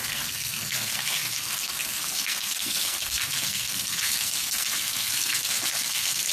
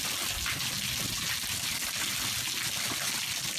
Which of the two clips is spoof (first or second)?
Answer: first